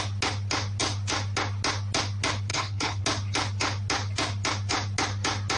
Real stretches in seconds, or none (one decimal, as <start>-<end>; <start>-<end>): 0.0-2.5; 3.0-5.6